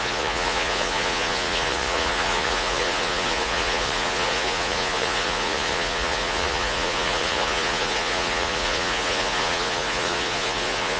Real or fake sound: fake